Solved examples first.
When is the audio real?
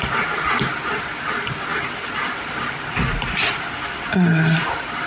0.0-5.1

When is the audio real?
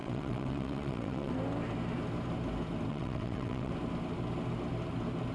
1.3-2.9; 3.7-5.3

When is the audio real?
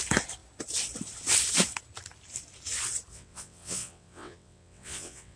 0.0-3.1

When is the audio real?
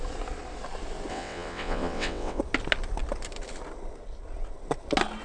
0.0-1.1; 2.4-5.2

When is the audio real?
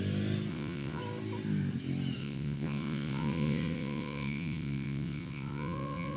0.0-0.5; 1.0-2.2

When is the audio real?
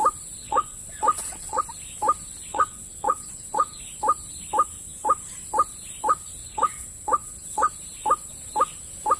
0.0-0.4; 1.6-2.5; 3.8-6.4; 7.7-9.2